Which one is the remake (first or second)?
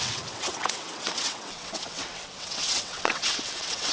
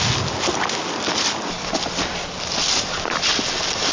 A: first